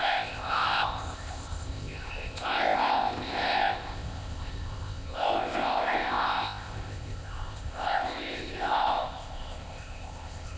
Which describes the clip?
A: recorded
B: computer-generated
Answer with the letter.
B